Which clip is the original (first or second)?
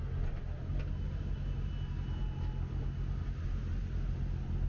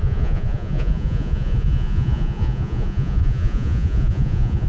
first